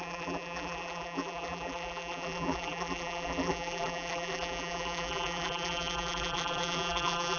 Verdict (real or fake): fake